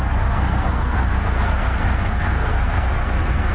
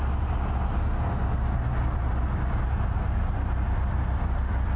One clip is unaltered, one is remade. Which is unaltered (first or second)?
second